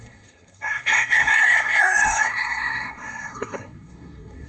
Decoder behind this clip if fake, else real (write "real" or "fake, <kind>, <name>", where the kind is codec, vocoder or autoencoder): fake, codec, SNAC